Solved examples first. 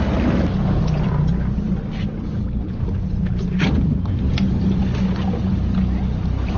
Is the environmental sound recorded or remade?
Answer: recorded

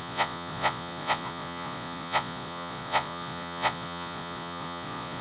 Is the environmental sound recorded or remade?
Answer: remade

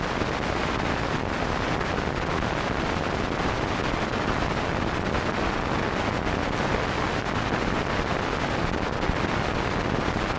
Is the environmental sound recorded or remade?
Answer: recorded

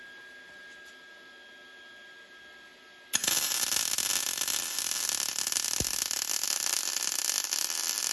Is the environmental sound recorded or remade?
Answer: recorded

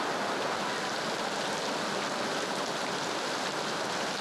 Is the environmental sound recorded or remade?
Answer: recorded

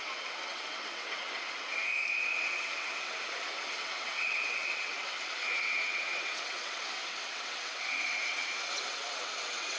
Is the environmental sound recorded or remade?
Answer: remade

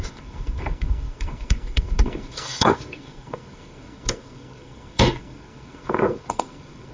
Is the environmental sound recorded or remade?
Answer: remade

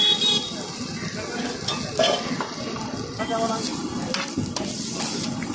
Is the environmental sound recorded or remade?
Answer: recorded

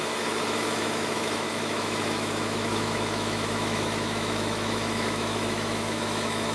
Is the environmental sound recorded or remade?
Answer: remade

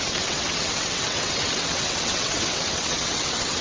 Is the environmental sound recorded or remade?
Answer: remade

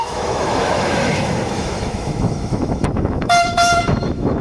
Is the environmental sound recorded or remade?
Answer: remade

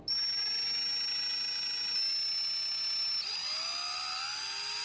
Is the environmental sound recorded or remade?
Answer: recorded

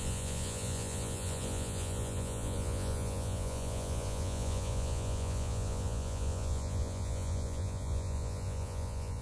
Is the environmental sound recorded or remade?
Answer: remade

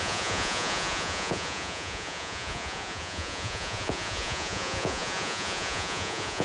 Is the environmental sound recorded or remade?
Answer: remade